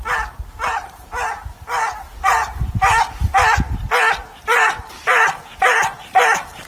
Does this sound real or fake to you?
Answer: real